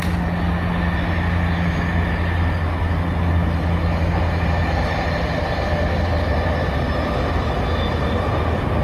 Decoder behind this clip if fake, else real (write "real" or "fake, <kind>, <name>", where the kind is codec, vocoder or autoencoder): real